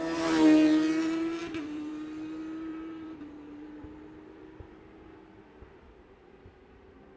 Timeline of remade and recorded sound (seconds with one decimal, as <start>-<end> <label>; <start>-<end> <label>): 0.0-1.4 recorded; 1.4-1.9 remade; 1.9-2.7 recorded; 2.7-4.8 remade; 4.8-7.2 recorded